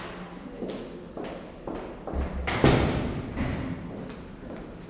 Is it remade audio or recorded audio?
recorded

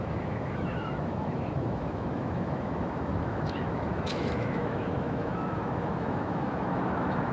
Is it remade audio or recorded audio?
remade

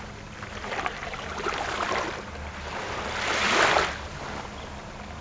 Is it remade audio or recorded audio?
recorded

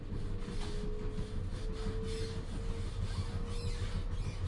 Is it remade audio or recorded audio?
recorded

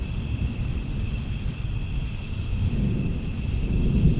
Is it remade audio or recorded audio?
recorded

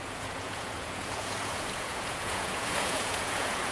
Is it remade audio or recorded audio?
remade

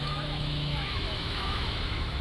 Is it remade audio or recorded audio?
remade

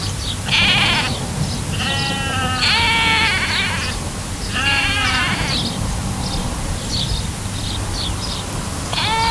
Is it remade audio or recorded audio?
recorded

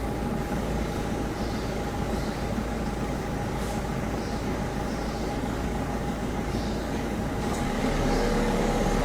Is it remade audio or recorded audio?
remade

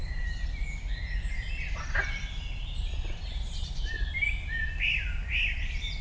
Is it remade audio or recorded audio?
recorded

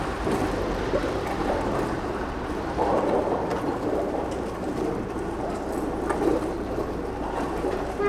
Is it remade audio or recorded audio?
remade